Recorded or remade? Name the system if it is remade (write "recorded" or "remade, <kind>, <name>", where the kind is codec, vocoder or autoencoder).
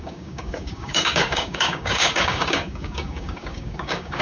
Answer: remade, codec, DAC